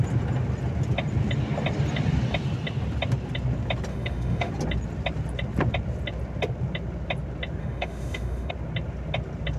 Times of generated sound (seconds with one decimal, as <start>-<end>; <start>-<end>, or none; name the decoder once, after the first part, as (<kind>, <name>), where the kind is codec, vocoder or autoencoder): 3.9-4.5 (autoencoder, DAC-VAE); 7.6-8.5